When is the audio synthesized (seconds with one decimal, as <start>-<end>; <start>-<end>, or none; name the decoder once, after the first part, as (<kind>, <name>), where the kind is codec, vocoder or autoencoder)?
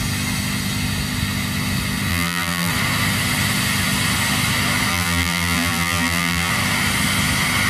2.1-2.7 (vocoder, BigVGAN v2); 4.9-6.5